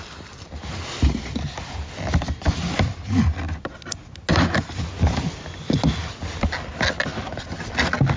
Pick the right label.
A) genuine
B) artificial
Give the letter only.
A